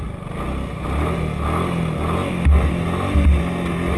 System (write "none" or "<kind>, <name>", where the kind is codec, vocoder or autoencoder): none